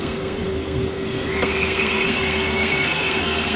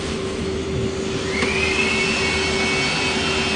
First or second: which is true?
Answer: second